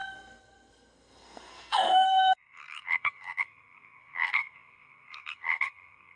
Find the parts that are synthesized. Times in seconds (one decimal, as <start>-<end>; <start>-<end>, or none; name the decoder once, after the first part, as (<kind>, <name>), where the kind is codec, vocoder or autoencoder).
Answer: 0.0-6.2 (codec, SNAC)